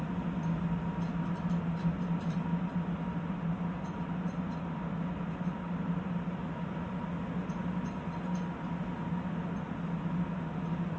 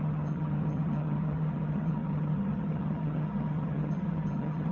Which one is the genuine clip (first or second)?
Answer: first